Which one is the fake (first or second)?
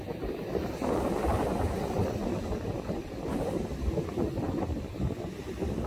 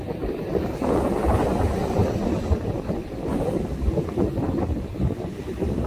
first